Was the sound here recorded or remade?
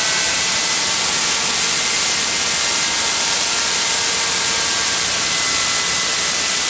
recorded